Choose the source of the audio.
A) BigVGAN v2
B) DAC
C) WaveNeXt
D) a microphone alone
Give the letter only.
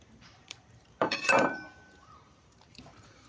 A